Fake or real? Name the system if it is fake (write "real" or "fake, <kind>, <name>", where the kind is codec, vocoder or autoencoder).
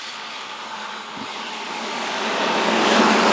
fake, codec, DAC